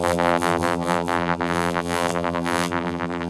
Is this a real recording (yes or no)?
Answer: no